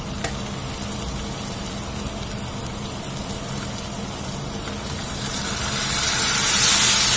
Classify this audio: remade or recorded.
recorded